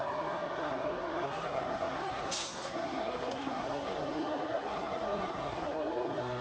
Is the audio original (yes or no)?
no